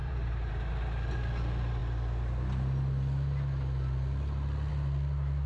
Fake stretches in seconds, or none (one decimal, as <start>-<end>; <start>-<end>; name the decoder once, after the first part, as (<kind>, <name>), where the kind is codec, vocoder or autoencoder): 0.0-0.5 (vocoder, BigVGAN v2)